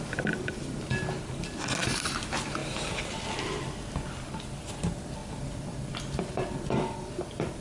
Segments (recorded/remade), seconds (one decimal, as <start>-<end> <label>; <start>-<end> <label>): 0.0-7.6 recorded